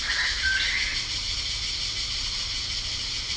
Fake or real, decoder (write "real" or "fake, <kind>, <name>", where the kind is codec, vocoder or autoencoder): real